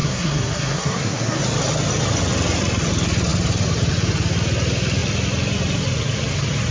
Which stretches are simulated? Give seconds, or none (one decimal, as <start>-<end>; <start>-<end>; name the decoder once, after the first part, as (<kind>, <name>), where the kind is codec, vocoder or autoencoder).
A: 0.0-1.4 (codec, SNAC)